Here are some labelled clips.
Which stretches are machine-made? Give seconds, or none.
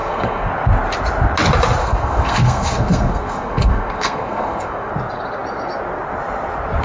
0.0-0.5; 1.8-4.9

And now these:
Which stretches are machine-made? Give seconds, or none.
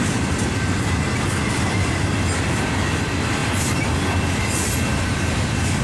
none